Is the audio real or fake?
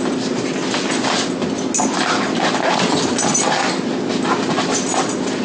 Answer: real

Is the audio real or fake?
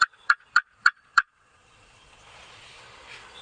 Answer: fake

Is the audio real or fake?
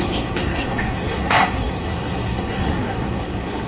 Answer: fake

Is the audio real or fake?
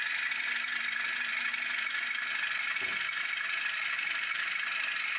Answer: fake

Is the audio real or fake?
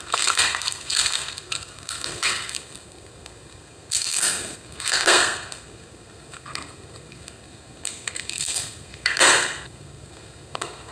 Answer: fake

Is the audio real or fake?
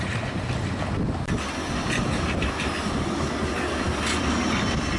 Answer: real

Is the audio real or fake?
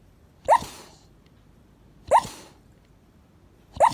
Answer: real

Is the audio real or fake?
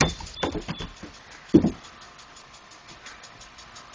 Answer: real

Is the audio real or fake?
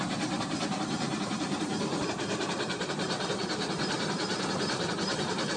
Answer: fake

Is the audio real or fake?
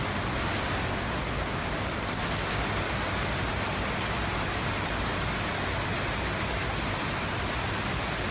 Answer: real